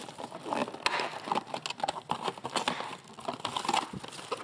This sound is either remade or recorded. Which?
recorded